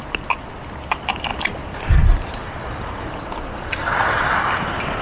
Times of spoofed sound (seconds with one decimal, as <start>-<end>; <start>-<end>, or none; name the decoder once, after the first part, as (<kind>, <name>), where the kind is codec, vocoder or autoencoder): 1.3-2.0 (vocoder, BigVGAN v2); 2.4-4.5